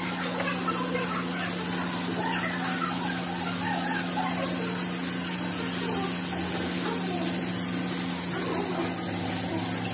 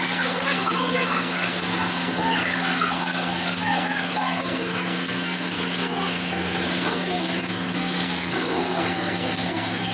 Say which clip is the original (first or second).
first